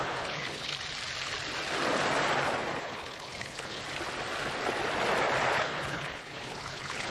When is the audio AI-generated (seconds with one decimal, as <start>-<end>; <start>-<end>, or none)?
0.0-0.7; 2.8-3.8; 5.5-7.1